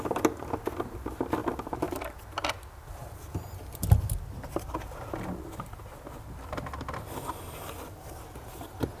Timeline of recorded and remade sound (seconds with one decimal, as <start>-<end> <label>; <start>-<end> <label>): 0.0-9.0 recorded